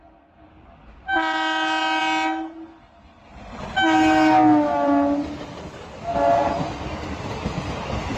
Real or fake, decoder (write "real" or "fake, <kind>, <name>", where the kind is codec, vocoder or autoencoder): real